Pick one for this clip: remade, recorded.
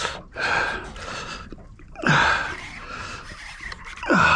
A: recorded